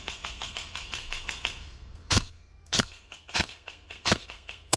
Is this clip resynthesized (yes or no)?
yes